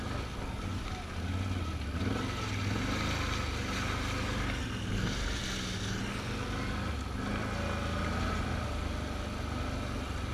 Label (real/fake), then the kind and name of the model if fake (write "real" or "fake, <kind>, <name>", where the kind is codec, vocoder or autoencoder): real